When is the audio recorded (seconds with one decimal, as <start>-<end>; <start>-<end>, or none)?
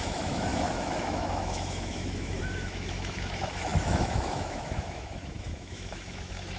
none